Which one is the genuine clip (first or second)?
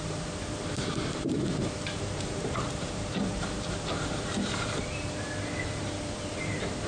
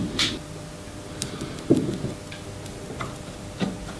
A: second